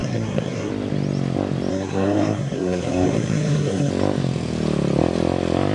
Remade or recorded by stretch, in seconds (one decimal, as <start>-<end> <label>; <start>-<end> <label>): 0.0-0.7 remade; 0.7-1.7 recorded; 1.7-3.9 remade; 3.9-5.7 recorded